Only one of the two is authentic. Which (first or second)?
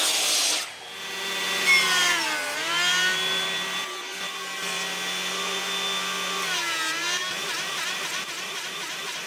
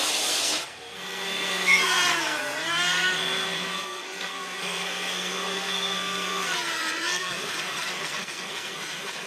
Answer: first